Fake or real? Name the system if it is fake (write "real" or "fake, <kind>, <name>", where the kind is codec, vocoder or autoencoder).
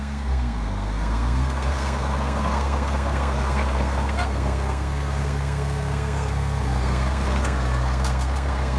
fake, codec, SNAC